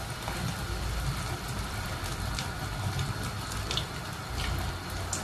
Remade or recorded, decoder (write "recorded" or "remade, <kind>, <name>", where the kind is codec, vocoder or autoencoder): recorded